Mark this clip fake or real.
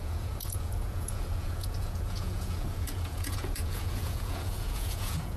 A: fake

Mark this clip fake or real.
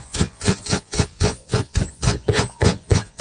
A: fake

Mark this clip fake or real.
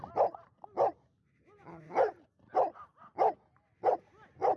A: real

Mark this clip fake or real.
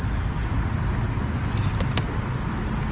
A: real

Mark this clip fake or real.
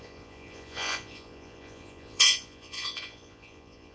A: fake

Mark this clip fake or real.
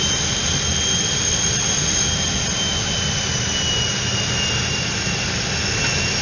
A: real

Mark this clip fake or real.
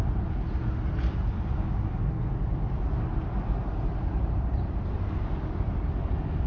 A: real